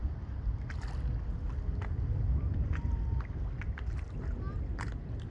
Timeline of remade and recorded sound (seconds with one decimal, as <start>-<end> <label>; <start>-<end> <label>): 0.0-5.3 recorded